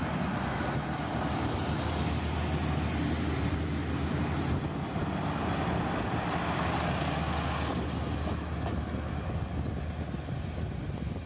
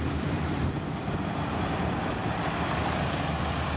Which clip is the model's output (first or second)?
second